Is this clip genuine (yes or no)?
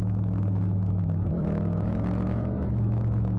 no